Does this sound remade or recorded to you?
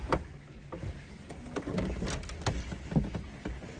recorded